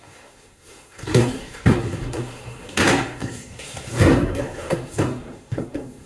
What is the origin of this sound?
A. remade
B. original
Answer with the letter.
A